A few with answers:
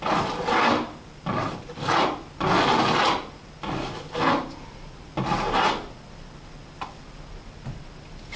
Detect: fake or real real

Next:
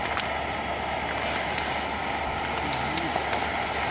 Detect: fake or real real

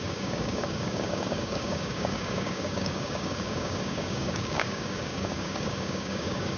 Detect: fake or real fake